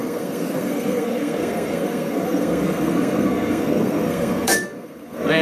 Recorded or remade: remade